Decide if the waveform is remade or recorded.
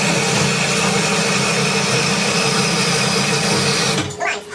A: recorded